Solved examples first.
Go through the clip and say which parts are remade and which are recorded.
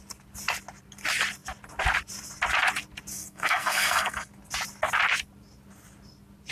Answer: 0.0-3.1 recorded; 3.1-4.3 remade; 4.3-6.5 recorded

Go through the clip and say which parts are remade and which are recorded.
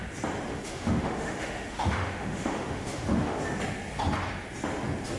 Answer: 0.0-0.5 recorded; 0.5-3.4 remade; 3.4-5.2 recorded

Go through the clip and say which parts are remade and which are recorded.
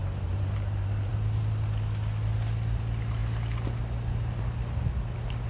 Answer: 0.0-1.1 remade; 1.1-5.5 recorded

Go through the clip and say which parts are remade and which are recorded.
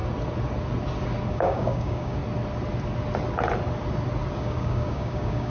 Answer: 0.0-1.3 recorded; 1.3-2.2 remade; 2.2-4.3 recorded; 4.3-5.5 remade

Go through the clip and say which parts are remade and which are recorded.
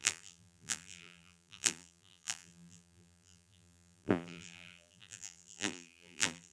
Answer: 0.0-6.5 remade